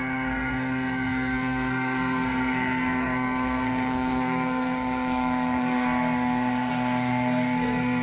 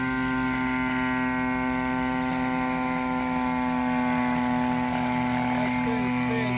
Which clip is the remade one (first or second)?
first